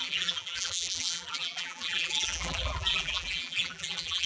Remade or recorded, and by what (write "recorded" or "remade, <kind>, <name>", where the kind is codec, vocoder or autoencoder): remade, vocoder, BigVGAN v2